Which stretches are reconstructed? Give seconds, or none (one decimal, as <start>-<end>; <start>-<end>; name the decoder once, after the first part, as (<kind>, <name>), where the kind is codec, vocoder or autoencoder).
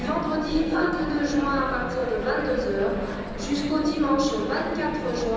0.5-1.1 (codec, SNAC)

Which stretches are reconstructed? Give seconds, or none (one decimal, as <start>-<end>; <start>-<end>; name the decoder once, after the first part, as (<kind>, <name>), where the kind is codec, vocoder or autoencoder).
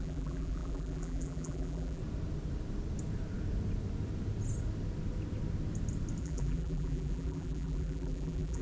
0.0-2.0 (vocoder, BigVGAN v2); 6.2-8.6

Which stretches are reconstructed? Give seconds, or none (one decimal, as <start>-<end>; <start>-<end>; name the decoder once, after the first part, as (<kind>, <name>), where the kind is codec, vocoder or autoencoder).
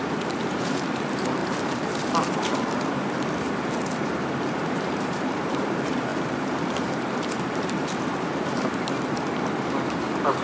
0.0-10.4 (vocoder, BigVGAN v2)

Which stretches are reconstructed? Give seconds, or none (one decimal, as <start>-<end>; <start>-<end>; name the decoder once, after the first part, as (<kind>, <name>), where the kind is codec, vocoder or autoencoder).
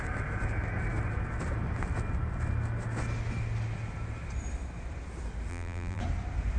5.5-6.0 (vocoder, BigVGAN v2)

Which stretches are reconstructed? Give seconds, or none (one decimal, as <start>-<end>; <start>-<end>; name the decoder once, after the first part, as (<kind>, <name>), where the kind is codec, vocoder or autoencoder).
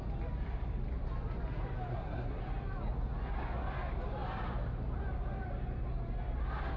1.9-2.4 (codec, SNAC)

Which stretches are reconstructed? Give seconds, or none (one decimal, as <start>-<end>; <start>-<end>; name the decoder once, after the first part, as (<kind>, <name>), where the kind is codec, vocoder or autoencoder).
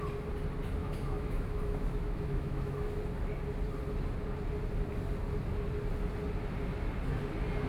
0.8-3.0 (autoencoder, DAC-VAE)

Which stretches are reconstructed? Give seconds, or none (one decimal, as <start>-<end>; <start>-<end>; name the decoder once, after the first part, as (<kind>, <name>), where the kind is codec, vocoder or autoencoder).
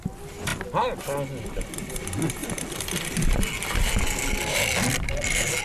none